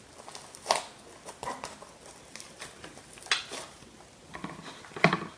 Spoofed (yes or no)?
no